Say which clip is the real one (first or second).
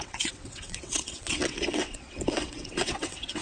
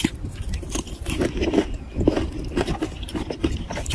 second